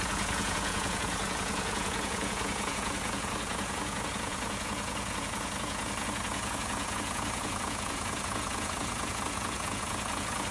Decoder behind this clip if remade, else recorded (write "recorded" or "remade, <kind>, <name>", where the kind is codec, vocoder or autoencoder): remade, vocoder, Vocos